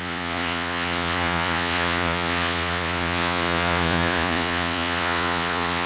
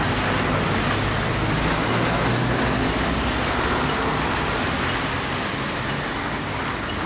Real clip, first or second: second